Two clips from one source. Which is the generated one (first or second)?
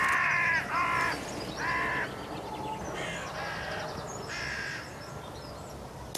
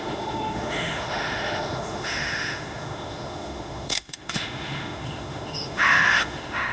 second